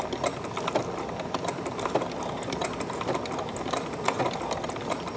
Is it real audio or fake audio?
real